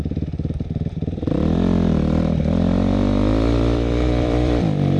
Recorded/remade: remade